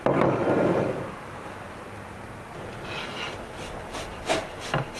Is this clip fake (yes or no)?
no